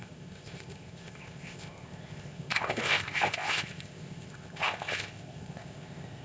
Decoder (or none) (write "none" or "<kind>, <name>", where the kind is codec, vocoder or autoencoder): codec, ZipCodec